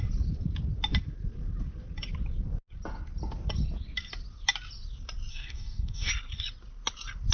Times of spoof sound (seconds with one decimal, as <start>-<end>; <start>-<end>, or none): 5.3-6.1